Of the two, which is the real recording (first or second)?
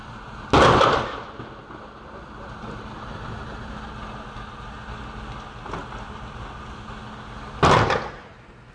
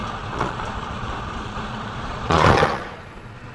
first